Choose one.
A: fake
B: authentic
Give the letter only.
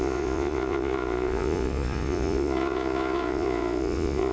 A